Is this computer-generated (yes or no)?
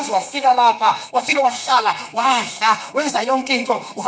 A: yes